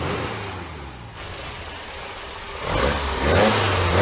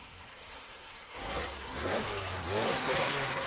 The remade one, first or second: second